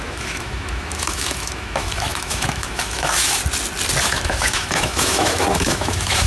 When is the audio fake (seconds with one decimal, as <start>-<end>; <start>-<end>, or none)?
0.0-3.4; 4.0-6.3

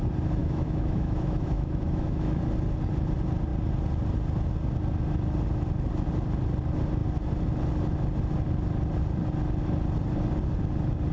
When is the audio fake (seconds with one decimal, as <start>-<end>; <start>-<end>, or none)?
0.4-2.4

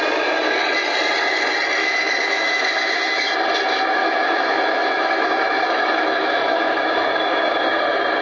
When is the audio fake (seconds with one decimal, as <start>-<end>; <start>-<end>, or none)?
1.8-3.2; 4.0-7.6

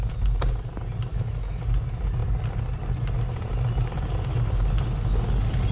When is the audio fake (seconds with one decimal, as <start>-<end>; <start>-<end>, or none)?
1.1-1.6

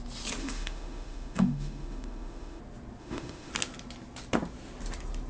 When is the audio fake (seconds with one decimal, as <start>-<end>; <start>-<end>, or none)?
0.4-2.6; 3.0-3.5

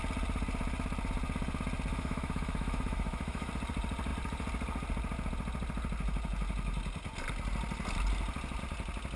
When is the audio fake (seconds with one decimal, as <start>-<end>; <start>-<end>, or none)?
1.9-3.5

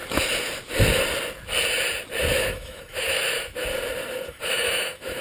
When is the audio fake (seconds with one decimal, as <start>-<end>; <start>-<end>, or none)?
2.4-3.6; 4.3-5.2

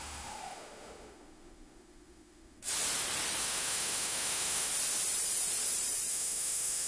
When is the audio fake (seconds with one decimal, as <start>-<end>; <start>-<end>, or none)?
0.0-2.6; 3.4-4.7; 6.1-6.9